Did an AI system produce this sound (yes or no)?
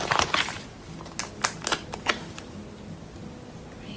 no